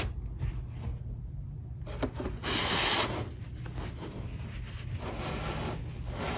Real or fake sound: real